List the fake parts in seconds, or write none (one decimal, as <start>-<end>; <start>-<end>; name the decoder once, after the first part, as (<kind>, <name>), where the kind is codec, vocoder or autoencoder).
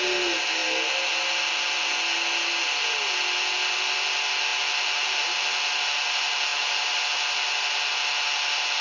6.5-7.0 (vocoder, BigVGAN v2)